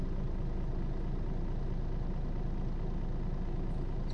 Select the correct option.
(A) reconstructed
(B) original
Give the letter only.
B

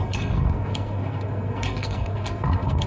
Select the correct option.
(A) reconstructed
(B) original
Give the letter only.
A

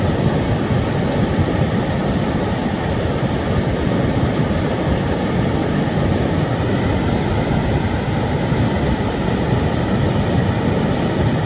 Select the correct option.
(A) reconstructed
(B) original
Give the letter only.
B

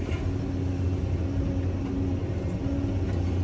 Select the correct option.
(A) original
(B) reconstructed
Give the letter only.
A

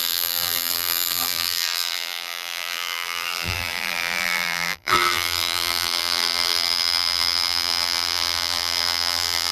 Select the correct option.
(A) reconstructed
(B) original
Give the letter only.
A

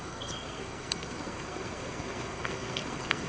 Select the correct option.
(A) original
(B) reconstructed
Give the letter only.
B